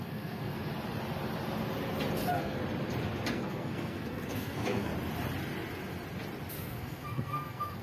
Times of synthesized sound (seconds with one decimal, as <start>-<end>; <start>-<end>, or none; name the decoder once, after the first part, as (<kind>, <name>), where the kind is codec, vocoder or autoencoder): 0.0-0.7 (codec, SNAC); 2.2-2.6; 3.3-4.9; 6.5-7.8